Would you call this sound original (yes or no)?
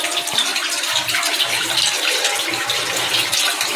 yes